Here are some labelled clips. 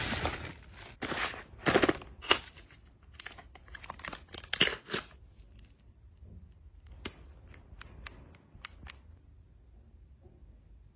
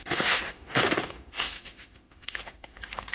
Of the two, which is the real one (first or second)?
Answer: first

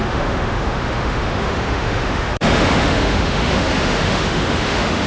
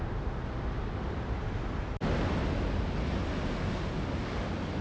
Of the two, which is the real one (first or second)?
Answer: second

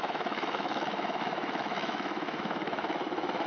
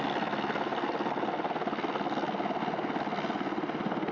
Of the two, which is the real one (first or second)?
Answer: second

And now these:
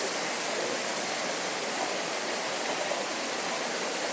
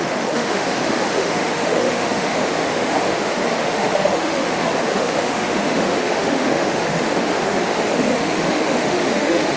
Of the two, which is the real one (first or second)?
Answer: first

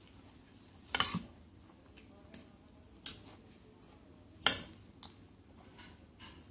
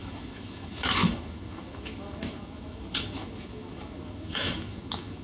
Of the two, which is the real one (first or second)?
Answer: first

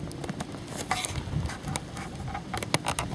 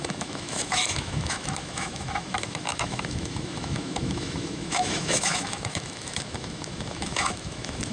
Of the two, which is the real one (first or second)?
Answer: first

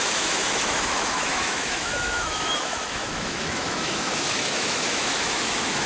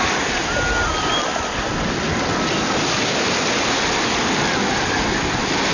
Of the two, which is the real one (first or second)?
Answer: second